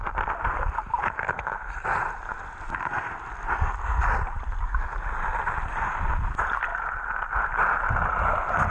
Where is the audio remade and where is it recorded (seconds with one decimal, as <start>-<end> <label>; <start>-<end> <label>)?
0.0-8.7 recorded